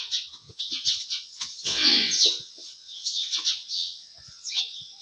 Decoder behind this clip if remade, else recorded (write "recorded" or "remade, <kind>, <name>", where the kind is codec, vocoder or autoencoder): remade, vocoder, WaveNeXt